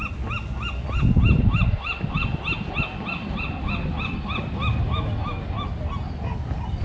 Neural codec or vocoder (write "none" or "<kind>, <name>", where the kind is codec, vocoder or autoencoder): none